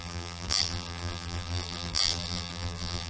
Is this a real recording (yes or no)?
no